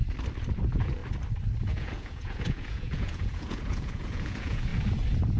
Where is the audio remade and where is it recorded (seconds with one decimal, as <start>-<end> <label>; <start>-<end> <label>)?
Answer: 0.0-0.6 recorded; 0.6-1.0 remade; 1.0-1.7 recorded; 1.7-4.7 remade; 4.7-5.4 recorded